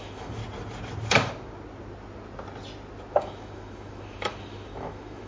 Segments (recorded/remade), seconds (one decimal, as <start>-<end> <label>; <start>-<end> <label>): 0.0-0.4 remade; 0.4-3.2 recorded; 3.2-5.3 remade